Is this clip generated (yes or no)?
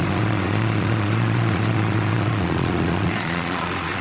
yes